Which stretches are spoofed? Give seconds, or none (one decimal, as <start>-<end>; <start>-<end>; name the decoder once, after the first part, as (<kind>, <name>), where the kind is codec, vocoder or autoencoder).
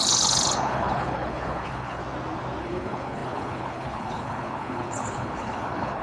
0.0-2.0 (codec, HILCodec); 2.6-6.0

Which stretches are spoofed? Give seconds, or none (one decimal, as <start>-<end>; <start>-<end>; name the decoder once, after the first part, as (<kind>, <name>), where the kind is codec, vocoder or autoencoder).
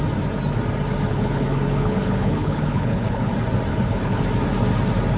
1.1-3.3 (codec, HILCodec); 3.7-4.2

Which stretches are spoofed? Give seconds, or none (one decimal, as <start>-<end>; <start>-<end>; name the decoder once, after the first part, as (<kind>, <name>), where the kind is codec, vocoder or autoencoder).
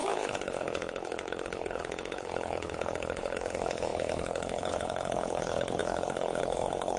0.0-7.0 (codec, HILCodec)